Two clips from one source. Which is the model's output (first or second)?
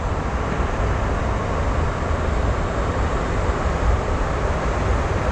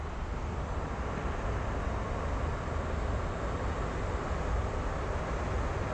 first